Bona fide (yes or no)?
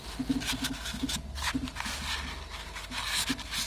yes